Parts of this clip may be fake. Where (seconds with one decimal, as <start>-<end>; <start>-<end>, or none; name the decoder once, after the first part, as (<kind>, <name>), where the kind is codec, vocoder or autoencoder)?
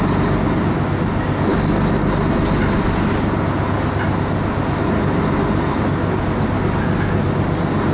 none